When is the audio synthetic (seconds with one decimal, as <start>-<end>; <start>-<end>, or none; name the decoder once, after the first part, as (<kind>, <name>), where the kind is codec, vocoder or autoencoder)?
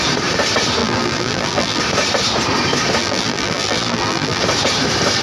0.8-1.8 (vocoder, BigVGAN v2); 3.0-4.4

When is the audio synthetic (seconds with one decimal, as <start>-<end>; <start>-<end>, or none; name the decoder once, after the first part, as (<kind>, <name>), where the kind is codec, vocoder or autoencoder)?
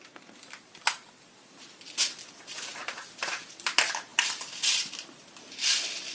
0.0-2.7 (vocoder, BigVGAN v2); 3.3-6.1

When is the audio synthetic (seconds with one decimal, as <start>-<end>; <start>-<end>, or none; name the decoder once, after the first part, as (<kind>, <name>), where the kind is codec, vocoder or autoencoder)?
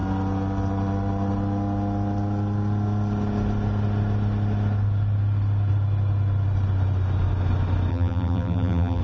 7.9-9.0 (vocoder, BigVGAN v2)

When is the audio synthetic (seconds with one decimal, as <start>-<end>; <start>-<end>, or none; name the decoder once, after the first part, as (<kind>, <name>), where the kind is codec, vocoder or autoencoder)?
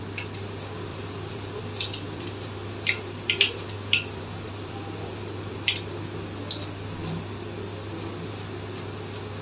0.9-5.5 (vocoder, BigVGAN v2)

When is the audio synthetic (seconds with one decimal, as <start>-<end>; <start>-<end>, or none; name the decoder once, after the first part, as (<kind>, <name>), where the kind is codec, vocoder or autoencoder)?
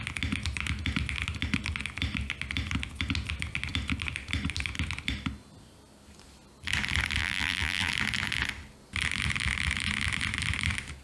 7.2-7.9 (vocoder, BigVGAN v2)